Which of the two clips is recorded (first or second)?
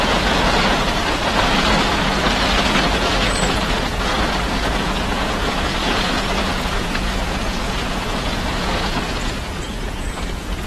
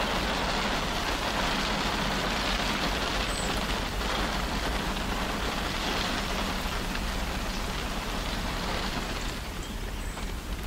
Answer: second